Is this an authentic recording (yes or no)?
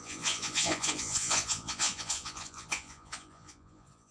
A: no